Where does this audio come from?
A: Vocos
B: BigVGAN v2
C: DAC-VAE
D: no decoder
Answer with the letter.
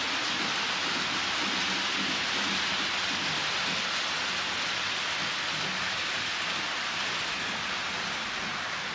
D